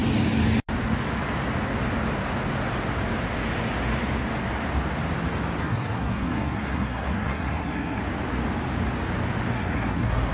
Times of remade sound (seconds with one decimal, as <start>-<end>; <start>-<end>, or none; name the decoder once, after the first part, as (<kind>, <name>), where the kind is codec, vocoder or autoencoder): 5.6-8.0 (codec, SNAC); 9.5-10.3